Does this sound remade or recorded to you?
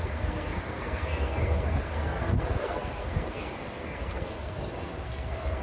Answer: remade